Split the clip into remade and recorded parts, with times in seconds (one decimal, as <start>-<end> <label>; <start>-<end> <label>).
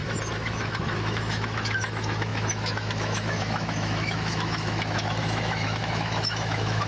0.0-6.9 remade